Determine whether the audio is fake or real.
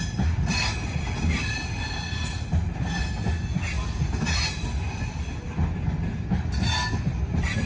real